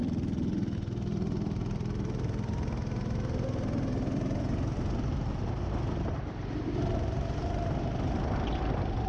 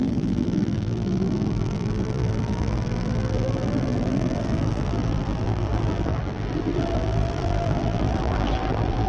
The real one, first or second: first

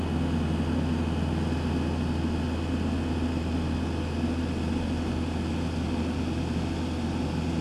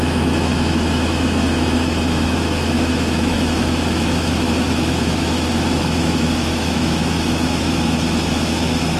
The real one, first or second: first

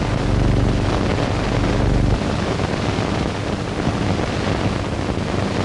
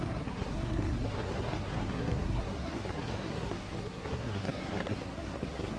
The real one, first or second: first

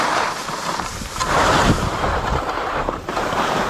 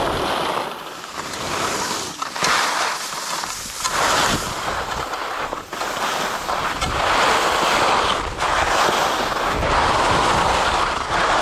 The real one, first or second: second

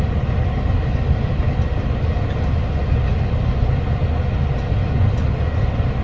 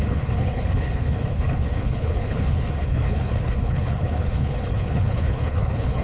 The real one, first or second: first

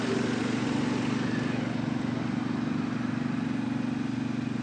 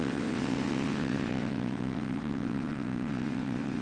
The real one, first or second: first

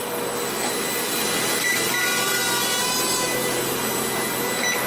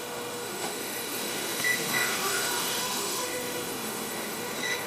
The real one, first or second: first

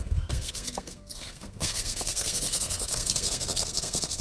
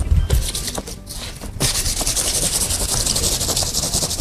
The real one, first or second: second